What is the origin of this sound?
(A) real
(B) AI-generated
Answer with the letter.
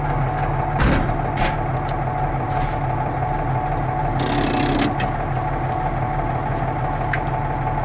A